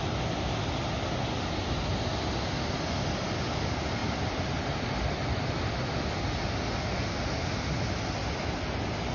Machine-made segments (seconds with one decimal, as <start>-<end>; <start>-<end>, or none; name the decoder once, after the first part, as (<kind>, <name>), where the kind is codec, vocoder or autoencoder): none